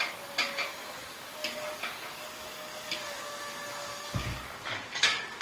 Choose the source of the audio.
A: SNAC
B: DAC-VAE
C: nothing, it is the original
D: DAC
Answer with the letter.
D